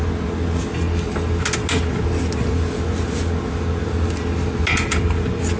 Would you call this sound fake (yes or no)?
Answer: no